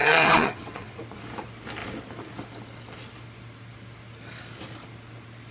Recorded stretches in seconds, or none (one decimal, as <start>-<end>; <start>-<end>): 1.0-5.5